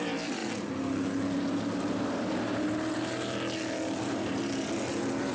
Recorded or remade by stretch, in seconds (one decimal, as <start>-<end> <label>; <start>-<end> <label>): 0.0-0.4 remade; 0.4-3.6 recorded; 3.6-5.3 remade

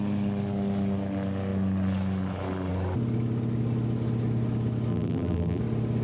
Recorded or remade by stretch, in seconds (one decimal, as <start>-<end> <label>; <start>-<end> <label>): 0.0-4.9 recorded; 4.9-5.6 remade; 5.6-6.0 recorded

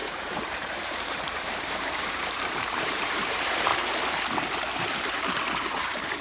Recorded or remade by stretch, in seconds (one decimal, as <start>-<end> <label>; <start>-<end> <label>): 0.0-3.7 remade; 3.7-5.8 recorded; 5.8-6.2 remade

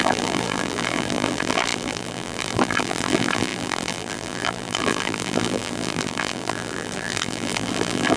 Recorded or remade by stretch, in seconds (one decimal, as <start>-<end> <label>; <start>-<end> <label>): 0.0-8.2 remade

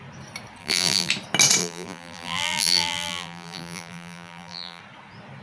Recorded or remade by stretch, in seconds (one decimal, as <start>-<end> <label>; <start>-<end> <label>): 0.0-0.6 recorded; 0.6-1.1 remade; 1.1-1.6 recorded; 1.6-4.8 remade; 4.8-5.4 recorded

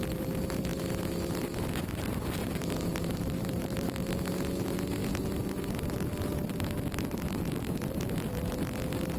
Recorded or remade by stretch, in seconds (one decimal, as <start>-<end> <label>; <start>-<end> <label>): 0.0-2.4 recorded; 2.4-4.1 remade; 4.1-9.2 recorded